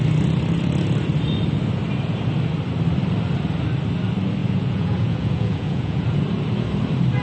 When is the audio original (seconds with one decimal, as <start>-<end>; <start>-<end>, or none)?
0.0-4.4; 6.2-7.2